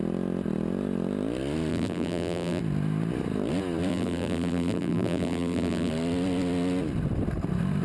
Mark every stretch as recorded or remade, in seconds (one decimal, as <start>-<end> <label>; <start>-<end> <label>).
0.0-1.7 recorded; 1.7-2.6 remade; 2.6-3.9 recorded; 3.9-5.9 remade; 5.9-7.8 recorded